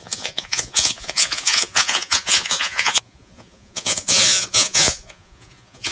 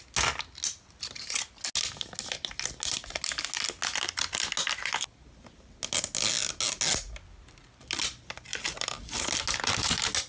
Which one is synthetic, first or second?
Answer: first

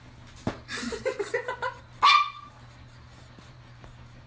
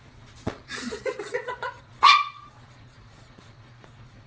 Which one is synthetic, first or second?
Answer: second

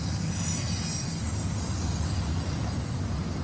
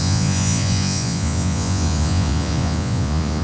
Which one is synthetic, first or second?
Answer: second